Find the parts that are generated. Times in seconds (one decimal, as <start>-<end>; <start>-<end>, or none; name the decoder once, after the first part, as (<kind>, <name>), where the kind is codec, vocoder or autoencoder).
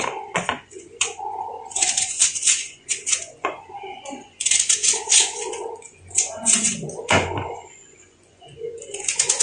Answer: 0.0-9.4 (vocoder, Vocos)